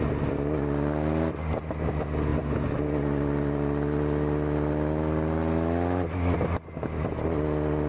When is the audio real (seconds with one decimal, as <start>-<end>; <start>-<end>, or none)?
0.0-7.9